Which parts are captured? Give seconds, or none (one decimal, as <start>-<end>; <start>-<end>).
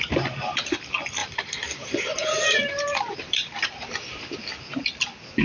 0.0-1.2; 3.7-5.4